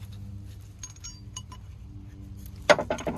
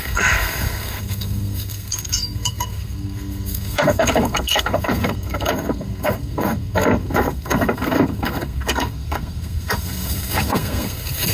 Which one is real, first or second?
first